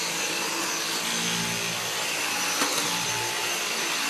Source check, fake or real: real